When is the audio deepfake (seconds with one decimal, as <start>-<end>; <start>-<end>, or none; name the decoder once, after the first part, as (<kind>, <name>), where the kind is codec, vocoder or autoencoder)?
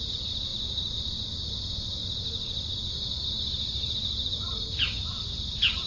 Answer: none